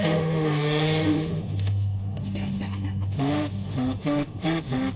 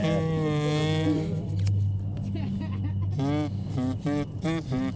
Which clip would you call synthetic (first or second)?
first